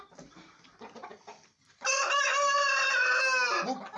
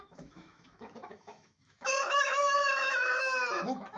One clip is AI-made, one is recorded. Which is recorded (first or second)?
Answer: first